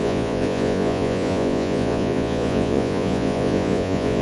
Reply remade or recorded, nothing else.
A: remade